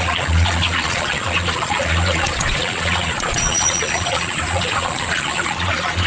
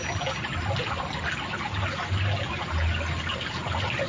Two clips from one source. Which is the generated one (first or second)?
first